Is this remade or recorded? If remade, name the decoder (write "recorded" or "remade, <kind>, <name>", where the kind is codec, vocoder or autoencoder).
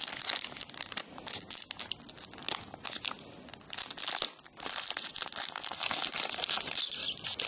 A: recorded